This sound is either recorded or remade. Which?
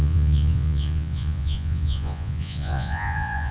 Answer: remade